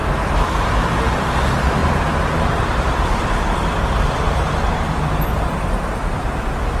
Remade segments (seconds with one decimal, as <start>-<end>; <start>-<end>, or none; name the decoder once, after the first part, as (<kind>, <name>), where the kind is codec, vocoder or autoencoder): 1.1-6.8 (vocoder, BigVGAN v2)